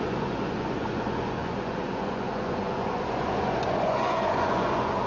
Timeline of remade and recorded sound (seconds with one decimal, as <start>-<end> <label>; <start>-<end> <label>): 0.0-5.1 remade